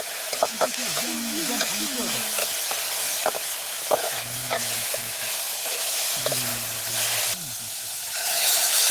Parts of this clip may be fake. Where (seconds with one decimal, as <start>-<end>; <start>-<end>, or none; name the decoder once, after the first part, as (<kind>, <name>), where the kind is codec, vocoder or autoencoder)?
0.0-2.4 (autoencoder, DAC-VAE); 2.9-6.5; 7.6-8.9